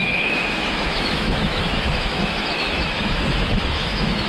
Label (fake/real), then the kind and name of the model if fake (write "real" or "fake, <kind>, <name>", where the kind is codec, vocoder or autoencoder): fake, autoencoder, DAC-VAE